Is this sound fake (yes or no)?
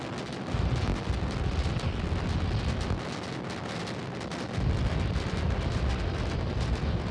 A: no